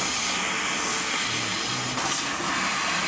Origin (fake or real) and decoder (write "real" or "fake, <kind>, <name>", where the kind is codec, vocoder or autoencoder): real